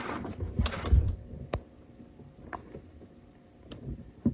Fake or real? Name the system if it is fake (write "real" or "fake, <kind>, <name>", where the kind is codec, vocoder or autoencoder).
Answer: fake, vocoder, BigVGAN v2